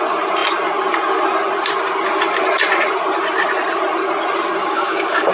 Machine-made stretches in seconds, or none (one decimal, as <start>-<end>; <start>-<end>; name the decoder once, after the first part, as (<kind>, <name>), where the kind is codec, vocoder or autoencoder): 4.6-5.3 (codec, DAC)